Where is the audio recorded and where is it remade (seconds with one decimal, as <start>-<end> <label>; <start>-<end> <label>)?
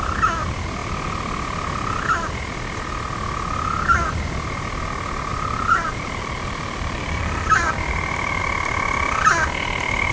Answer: 0.0-5.3 recorded; 5.3-8.4 remade; 8.4-10.1 recorded